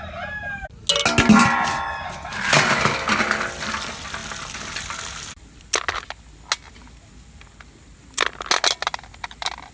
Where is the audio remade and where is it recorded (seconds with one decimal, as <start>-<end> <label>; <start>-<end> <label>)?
0.0-9.7 recorded